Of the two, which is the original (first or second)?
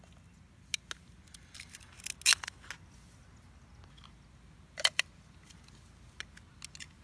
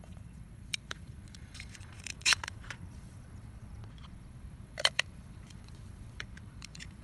first